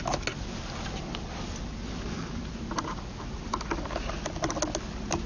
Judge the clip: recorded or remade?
recorded